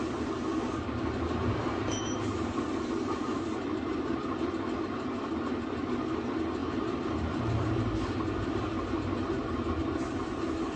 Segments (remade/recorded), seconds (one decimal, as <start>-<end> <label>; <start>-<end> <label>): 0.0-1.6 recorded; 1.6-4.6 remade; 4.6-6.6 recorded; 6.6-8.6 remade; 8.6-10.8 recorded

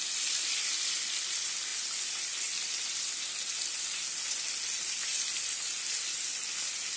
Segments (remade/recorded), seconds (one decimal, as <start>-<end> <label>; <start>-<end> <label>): 0.0-7.0 recorded

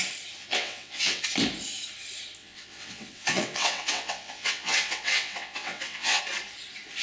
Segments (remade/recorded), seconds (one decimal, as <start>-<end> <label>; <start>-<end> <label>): 0.0-0.4 recorded; 0.4-1.2 remade; 1.2-2.4 recorded; 2.4-6.2 remade; 6.2-7.0 recorded

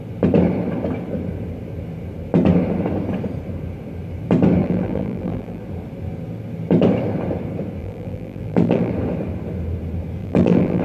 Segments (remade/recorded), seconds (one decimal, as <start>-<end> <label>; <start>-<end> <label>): 0.0-4.6 recorded; 4.6-5.6 remade; 5.6-7.8 recorded; 7.8-8.9 remade; 8.9-10.2 recorded; 10.2-10.8 remade